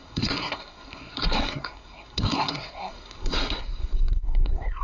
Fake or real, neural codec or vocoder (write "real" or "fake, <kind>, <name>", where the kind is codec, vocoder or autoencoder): fake, codec, SNAC